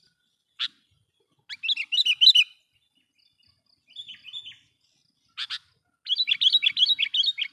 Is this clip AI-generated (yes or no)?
no